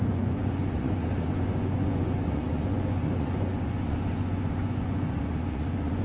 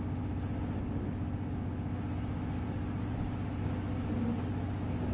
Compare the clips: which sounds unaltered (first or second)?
second